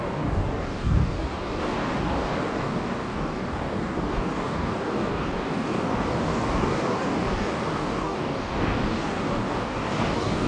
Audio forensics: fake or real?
fake